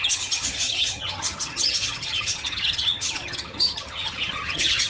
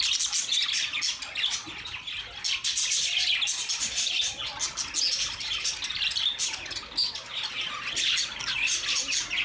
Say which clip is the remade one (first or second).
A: first